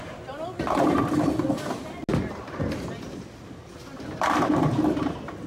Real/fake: real